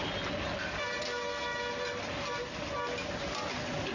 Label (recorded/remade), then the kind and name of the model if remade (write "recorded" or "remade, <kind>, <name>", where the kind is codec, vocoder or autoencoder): recorded